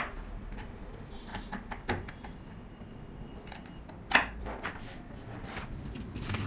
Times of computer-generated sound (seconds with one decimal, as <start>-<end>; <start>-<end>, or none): none